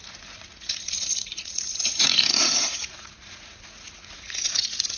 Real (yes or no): no